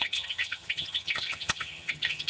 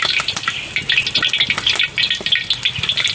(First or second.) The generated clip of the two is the first